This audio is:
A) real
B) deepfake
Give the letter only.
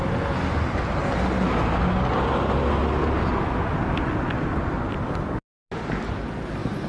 A